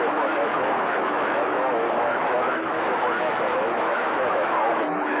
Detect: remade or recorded remade